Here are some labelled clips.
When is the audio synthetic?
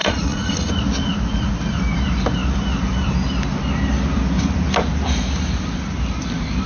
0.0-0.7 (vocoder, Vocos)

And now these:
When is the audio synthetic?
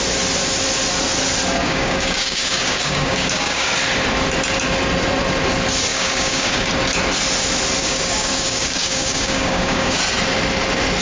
1.6-3.7 (codec, DAC); 5.9-6.7; 7.8-10.0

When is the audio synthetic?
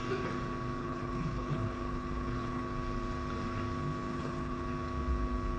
0.8-2.6 (codec, HILCodec); 4.1-4.6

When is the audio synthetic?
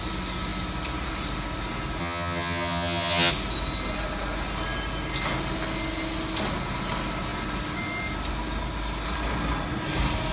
2.0-3.3 (vocoder, HiFi-GAN)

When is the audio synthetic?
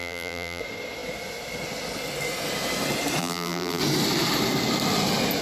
0.0-0.6 (vocoder, BigVGAN v2); 3.2-3.8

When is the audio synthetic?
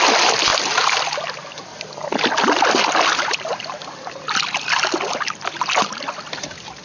none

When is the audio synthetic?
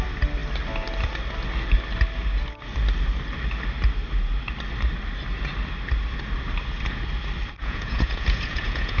7.6-9.0 (vocoder, Vocos)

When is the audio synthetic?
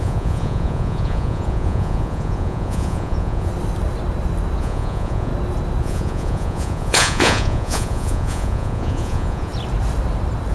0.0-3.5 (vocoder, Vocos); 4.6-5.3; 5.8-9.5